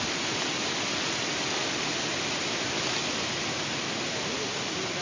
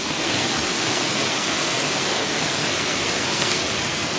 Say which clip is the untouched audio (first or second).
first